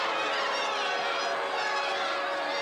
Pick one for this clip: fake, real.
real